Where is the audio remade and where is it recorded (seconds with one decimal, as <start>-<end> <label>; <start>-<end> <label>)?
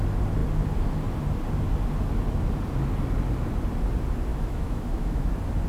0.0-4.3 recorded; 4.3-5.3 remade; 5.3-5.7 recorded